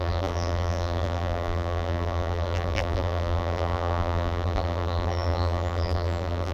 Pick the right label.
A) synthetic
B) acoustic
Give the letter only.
A